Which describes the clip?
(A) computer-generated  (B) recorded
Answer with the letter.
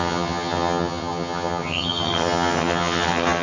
A